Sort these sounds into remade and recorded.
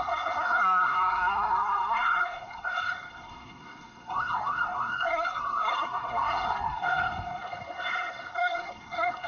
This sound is remade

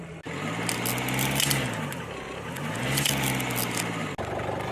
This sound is recorded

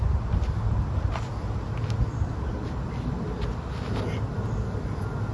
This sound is recorded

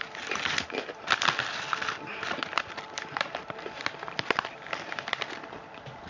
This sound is remade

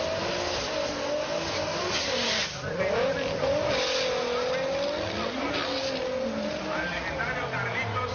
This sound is recorded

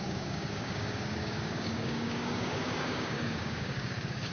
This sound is remade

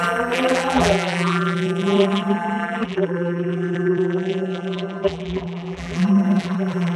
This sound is remade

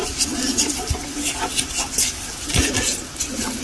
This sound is recorded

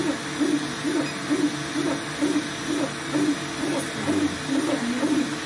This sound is recorded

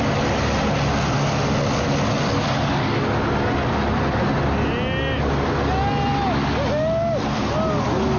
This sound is recorded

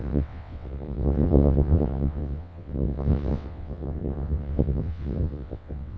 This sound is remade